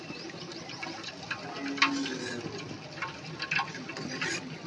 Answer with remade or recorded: recorded